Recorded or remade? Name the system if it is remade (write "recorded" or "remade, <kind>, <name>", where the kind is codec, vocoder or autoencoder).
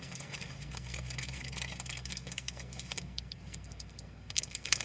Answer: remade, codec, SNAC